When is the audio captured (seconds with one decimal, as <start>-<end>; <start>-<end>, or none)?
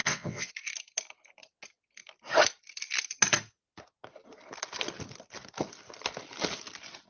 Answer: 0.5-7.1